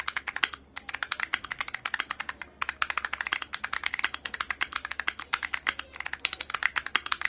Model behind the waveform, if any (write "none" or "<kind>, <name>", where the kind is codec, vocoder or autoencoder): none